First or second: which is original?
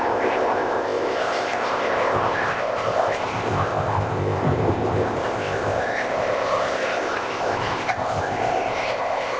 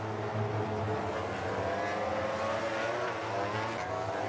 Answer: second